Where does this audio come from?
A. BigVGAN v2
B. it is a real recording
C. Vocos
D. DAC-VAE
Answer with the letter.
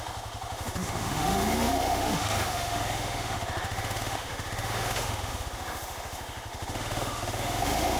D